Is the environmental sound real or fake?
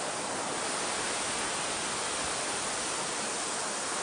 real